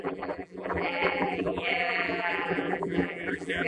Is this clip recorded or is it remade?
remade